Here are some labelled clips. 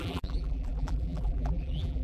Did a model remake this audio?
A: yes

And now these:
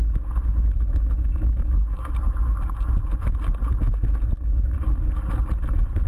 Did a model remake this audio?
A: no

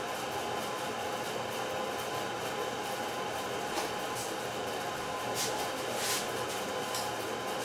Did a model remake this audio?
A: no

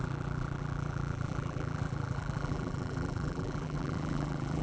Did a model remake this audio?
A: yes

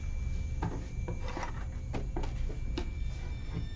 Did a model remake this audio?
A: no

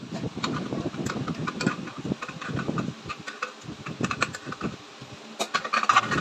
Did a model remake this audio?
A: no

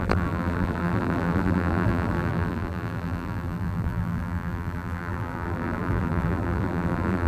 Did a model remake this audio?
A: yes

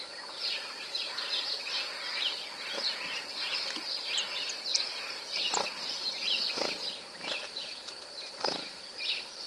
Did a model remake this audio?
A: yes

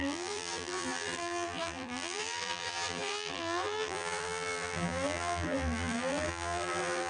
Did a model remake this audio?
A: yes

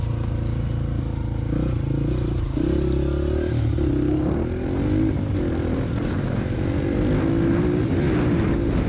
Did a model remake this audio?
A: no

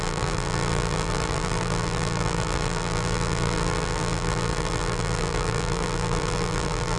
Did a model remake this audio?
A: yes